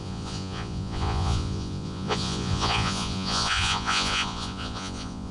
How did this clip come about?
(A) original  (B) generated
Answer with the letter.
B